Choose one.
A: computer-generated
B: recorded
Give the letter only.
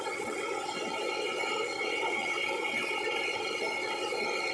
A